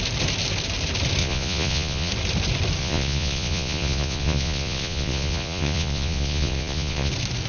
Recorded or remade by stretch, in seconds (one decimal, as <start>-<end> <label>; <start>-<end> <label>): 0.0-1.2 recorded; 1.2-2.1 remade; 2.1-2.8 recorded; 2.8-7.1 remade; 7.1-7.5 recorded